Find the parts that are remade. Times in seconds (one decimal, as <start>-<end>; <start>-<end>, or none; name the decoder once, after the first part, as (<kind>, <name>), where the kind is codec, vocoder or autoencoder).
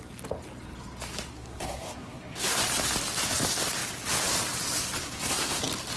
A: 1.3-2.6 (codec, SNAC); 5.0-5.6